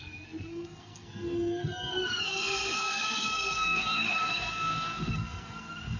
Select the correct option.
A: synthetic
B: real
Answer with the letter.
A